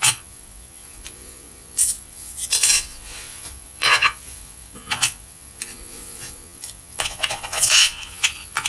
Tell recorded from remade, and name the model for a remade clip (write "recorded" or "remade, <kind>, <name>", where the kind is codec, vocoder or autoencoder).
remade, vocoder, Vocos